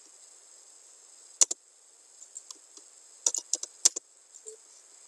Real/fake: real